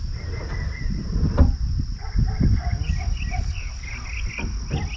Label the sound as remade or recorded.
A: recorded